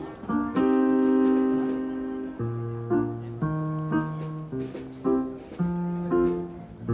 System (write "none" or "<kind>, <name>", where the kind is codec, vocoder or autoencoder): none